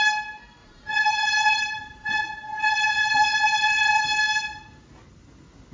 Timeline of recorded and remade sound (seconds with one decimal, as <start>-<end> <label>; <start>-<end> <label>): 0.0-0.6 recorded; 0.6-4.0 remade; 4.0-5.7 recorded